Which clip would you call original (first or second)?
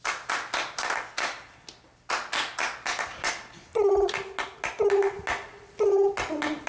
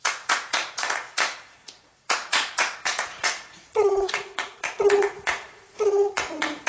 first